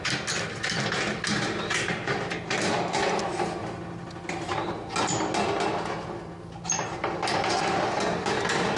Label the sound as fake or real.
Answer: real